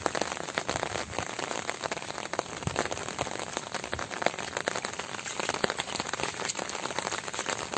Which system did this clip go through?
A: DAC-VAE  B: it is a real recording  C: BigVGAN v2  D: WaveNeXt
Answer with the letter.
B